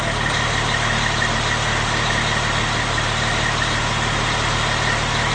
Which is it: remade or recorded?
recorded